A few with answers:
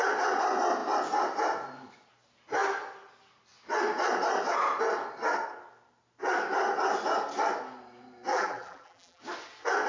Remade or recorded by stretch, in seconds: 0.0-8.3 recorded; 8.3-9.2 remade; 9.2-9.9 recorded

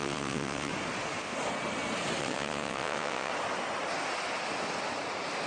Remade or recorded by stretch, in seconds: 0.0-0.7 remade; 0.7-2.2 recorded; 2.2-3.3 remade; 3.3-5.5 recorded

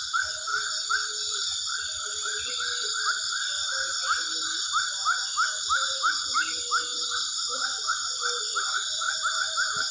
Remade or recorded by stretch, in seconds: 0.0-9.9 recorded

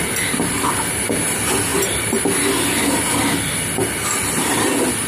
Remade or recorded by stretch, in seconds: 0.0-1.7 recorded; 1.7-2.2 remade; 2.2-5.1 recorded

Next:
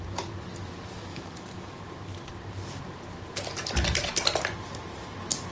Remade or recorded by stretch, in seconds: 0.0-1.1 recorded; 1.1-1.8 remade; 1.8-5.5 recorded

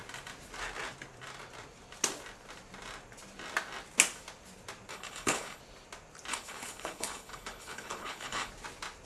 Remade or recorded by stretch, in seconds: 0.0-4.9 recorded; 4.9-5.6 remade; 5.6-6.3 recorded; 6.3-8.5 remade; 8.5-9.1 recorded

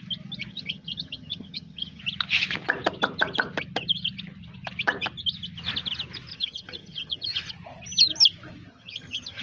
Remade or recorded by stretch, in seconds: 0.0-0.5 recorded; 0.5-2.0 remade; 2.0-6.3 recorded; 6.3-7.5 remade; 7.5-8.7 recorded; 8.7-9.4 remade